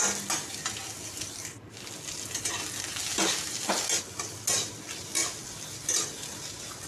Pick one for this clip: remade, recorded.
recorded